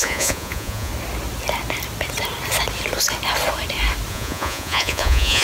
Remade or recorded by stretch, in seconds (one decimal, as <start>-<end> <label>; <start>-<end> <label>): 0.0-0.9 remade; 0.9-4.1 recorded; 4.1-5.4 remade

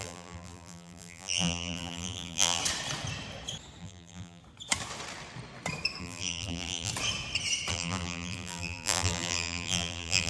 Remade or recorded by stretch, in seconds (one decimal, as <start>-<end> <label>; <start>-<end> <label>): 0.0-2.6 remade; 2.6-3.8 recorded; 3.8-4.4 remade; 4.4-6.0 recorded; 6.0-6.9 remade; 6.9-7.7 recorded; 7.7-10.3 remade